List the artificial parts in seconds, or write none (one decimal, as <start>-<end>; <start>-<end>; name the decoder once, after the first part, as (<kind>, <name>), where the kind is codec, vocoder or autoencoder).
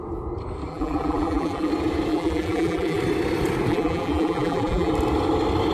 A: 0.7-1.7 (vocoder, BigVGAN v2); 2.1-3.0; 3.7-4.9